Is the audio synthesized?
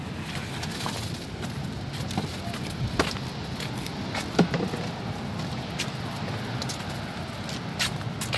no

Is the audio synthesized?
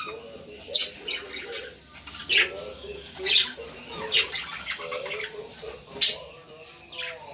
no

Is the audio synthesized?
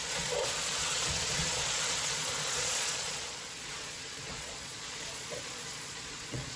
yes